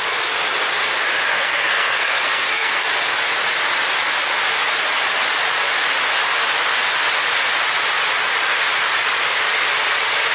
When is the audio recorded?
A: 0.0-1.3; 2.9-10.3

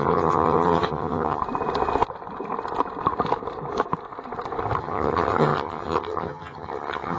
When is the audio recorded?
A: 1.4-4.8

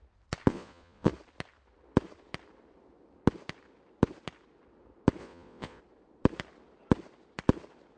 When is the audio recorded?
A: 0.0-0.5; 1.1-5.2; 5.8-8.0

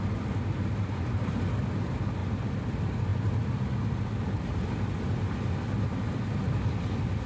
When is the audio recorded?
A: 0.0-2.2; 2.7-7.3